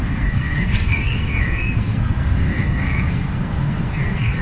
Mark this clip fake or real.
fake